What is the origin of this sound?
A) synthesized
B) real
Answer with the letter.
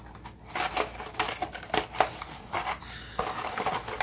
B